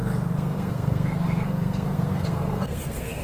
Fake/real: fake